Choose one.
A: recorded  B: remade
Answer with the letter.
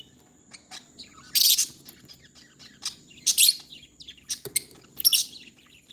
A